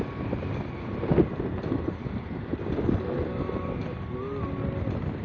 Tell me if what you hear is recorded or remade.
recorded